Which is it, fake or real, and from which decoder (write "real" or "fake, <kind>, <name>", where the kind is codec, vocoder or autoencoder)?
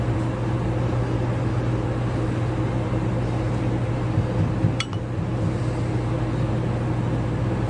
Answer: real